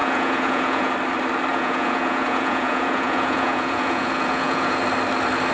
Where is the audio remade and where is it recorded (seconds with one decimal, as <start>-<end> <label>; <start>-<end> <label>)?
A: 0.0-0.9 remade; 0.9-1.5 recorded; 1.5-4.8 remade; 4.8-5.5 recorded